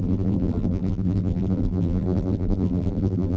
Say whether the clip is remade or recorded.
remade